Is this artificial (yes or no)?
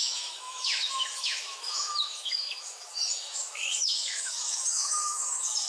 yes